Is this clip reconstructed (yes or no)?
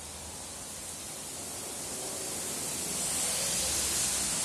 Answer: no